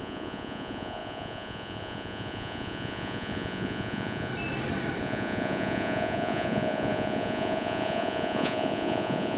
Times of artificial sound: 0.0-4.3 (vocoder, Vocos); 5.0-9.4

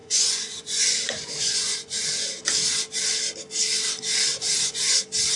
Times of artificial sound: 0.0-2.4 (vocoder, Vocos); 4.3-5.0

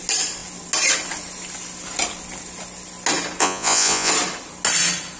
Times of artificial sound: 3.4-4.1 (vocoder, Vocos)

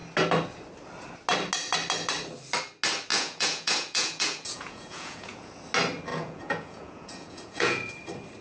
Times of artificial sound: 3.1-5.5 (vocoder, Vocos); 6.1-7.9

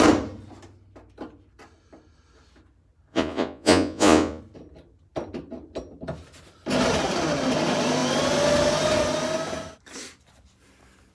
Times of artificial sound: 3.1-4.4 (vocoder, Vocos)

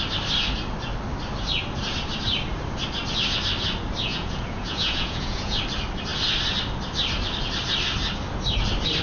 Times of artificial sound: 4.1-5.6 (vocoder, Vocos)

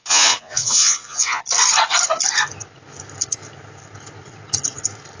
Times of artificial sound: 0.0-1.4 (vocoder, Vocos)

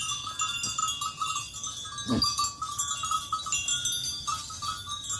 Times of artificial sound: none